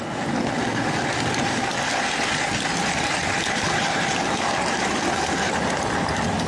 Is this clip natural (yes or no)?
yes